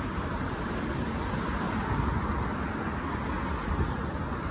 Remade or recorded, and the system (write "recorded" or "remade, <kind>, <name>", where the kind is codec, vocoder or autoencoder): recorded